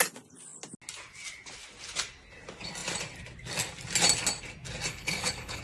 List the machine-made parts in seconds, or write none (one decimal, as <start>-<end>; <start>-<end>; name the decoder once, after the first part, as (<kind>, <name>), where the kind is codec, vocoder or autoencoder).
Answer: 4.9-5.6 (codec, HILCodec)